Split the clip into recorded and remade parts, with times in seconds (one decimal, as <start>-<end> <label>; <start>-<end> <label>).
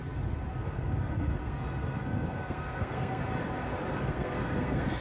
0.0-0.6 recorded; 0.6-3.2 remade; 3.2-3.9 recorded; 3.9-5.0 remade